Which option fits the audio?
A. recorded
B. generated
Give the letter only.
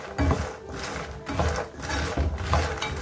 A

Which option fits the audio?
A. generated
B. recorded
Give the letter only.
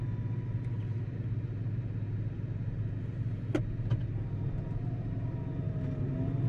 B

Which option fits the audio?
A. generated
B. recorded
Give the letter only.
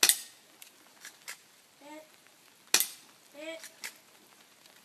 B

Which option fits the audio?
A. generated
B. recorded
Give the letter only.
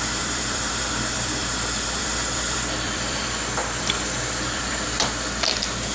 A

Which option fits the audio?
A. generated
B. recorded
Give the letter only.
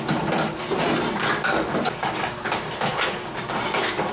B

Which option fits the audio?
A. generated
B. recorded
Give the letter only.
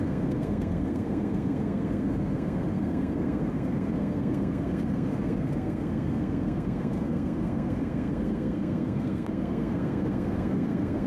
A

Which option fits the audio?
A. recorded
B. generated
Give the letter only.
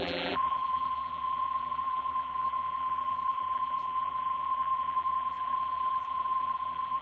B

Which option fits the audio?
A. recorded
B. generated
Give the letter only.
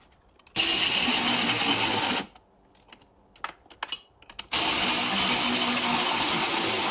A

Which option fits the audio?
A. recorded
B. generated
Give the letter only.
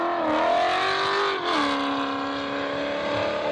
A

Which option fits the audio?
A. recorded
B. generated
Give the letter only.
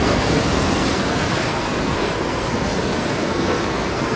B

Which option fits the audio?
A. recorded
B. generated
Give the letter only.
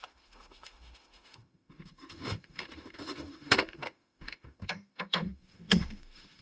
B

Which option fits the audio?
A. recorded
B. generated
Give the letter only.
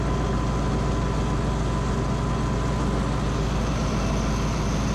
A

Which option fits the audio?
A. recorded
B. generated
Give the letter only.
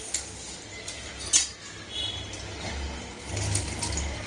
A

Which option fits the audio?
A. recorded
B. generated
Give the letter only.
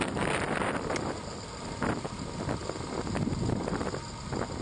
A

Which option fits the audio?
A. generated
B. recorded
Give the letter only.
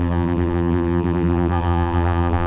A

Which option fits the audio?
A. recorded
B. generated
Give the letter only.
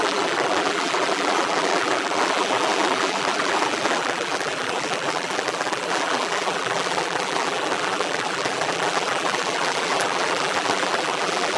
B